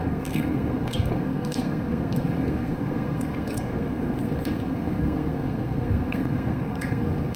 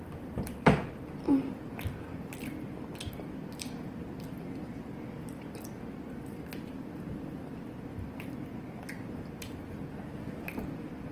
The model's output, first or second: first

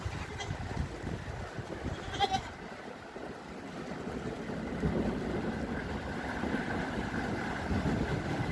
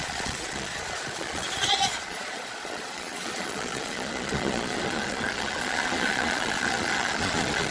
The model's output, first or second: second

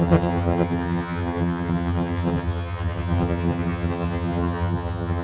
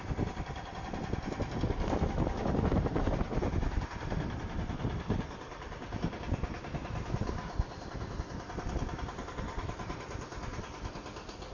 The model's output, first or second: first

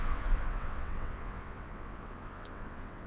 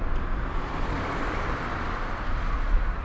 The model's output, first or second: first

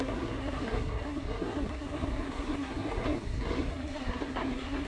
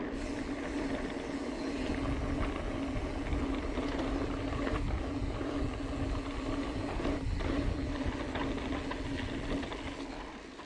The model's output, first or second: first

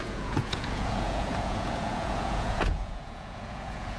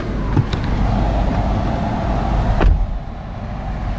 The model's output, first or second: first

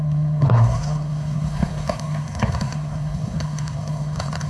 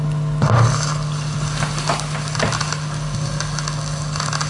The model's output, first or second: first